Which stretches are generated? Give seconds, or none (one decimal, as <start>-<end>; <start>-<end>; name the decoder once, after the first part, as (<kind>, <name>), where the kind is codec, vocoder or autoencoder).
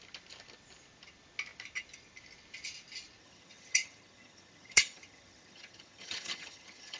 3.2-7.0 (vocoder, HiFi-GAN)